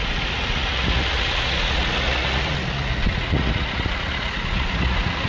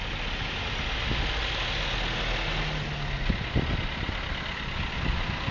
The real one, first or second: second